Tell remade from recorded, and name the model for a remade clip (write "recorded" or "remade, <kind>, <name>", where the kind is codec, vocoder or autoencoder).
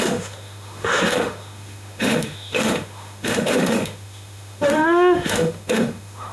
remade, autoencoder, DAC-VAE